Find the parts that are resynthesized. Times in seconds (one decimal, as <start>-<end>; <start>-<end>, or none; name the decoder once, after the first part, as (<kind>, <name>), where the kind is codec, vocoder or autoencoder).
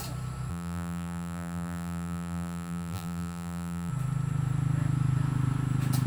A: 0.5-3.9 (vocoder, BigVGAN v2)